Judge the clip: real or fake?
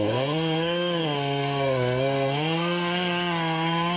fake